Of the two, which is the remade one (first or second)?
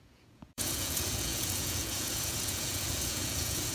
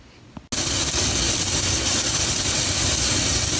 first